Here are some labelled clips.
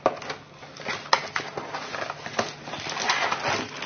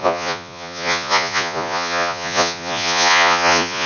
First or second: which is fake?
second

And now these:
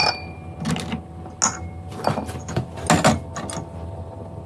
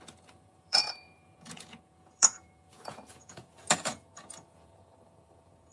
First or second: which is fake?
second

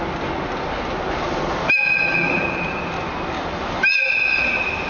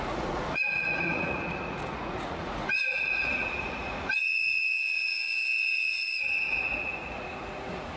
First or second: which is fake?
second